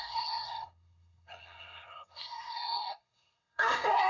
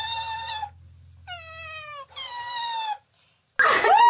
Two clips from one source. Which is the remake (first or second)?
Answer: first